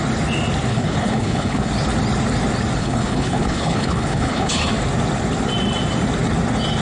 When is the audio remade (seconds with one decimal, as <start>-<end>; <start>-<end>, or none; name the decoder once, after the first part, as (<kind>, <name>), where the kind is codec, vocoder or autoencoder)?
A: 0.7-1.7 (codec, HILCodec); 2.8-4.7